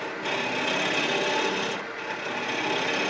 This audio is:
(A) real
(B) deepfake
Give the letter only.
A